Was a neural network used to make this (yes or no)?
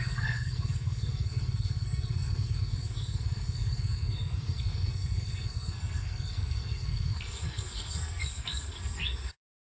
yes